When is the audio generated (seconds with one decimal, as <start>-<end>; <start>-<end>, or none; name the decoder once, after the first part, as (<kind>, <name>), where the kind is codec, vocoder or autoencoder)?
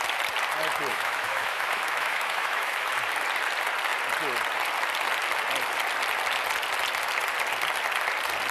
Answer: 0.9-2.9 (autoencoder, DAC-VAE)